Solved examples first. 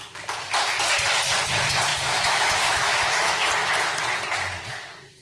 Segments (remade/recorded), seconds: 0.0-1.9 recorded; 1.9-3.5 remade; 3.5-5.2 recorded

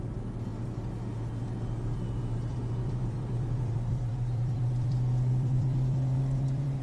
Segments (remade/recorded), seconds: 0.0-2.5 recorded; 2.5-6.8 remade

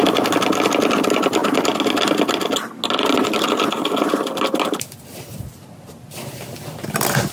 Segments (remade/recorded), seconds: 0.0-7.3 recorded

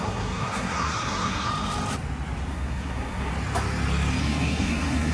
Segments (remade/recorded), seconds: 0.0-1.5 remade; 1.5-2.5 recorded; 2.5-3.3 remade; 3.3-4.2 recorded; 4.2-5.1 remade

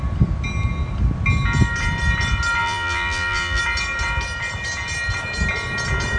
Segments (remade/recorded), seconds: 0.0-2.6 recorded; 2.6-3.6 remade; 3.6-6.2 recorded

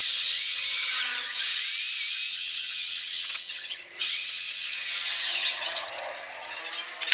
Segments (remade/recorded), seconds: 0.0-1.6 remade; 1.6-2.3 recorded; 2.3-6.6 remade; 6.6-7.1 recorded

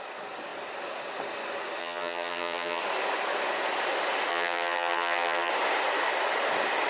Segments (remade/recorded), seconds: 0.0-1.8 recorded; 1.8-2.8 remade; 2.8-4.3 recorded; 4.3-5.5 remade; 5.5-6.9 recorded